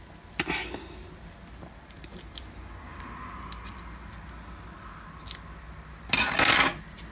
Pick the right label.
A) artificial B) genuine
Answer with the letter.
B